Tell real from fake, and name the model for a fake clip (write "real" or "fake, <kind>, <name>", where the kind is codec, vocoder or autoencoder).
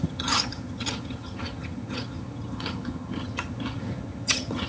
fake, vocoder, HiFi-GAN